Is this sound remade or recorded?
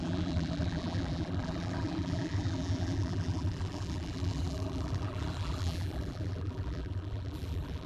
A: remade